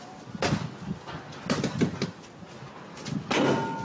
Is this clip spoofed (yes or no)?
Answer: no